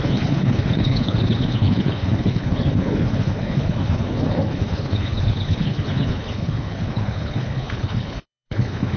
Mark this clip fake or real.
fake